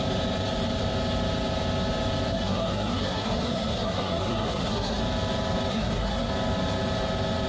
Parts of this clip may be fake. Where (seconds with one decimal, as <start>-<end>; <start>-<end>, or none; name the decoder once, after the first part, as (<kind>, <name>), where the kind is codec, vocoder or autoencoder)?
2.3-5.0 (codec, SNAC); 5.7-6.3